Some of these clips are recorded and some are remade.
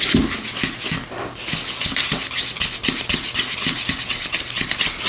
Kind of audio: recorded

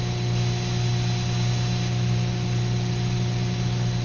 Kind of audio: recorded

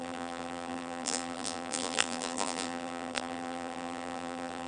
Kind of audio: remade